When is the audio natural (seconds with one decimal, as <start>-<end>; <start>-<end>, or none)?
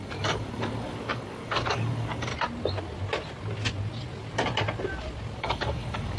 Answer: 2.3-5.4